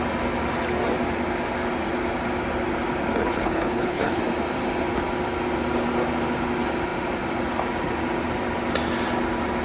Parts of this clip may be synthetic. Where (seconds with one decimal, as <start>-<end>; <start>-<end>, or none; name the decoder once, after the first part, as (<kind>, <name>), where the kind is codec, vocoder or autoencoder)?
3.2-4.2 (codec, HILCodec)